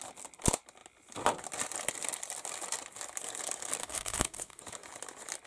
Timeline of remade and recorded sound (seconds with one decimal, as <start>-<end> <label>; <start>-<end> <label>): 0.0-3.8 recorded; 3.8-4.6 remade; 4.6-5.5 recorded

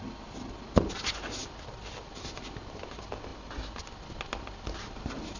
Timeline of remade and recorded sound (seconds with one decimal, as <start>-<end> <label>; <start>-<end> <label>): 0.0-5.4 recorded

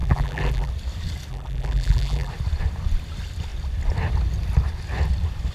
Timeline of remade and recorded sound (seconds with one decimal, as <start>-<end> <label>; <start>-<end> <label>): 0.0-0.7 remade; 0.7-1.3 recorded; 1.3-2.3 remade; 2.3-5.5 recorded

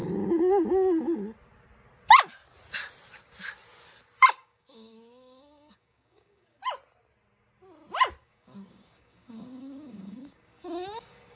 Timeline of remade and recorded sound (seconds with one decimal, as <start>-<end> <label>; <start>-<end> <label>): 0.0-4.3 recorded; 4.3-6.6 remade; 6.6-8.2 recorded; 8.2-11.4 remade

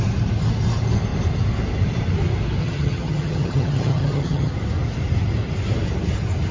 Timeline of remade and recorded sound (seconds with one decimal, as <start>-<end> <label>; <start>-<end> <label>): 0.0-2.6 recorded; 2.6-4.5 remade; 4.5-6.5 recorded

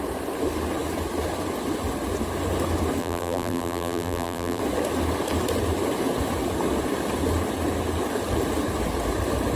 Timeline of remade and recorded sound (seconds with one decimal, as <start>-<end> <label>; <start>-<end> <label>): 0.0-3.0 recorded; 3.0-4.6 remade; 4.6-9.6 recorded

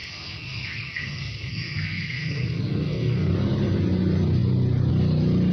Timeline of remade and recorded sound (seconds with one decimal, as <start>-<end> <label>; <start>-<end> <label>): 0.0-3.3 remade; 3.3-5.5 recorded